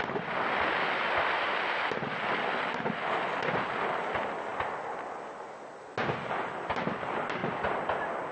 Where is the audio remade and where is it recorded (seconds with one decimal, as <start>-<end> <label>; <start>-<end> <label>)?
0.0-8.3 recorded